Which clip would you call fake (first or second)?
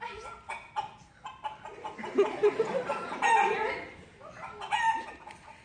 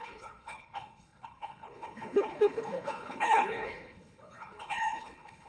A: second